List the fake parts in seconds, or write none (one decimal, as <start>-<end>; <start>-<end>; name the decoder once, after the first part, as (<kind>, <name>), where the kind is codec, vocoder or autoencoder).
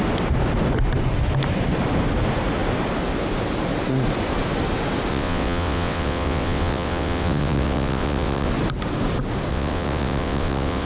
5.1-8.5 (vocoder, WaveNeXt); 9.5-10.9